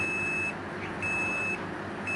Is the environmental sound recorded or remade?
recorded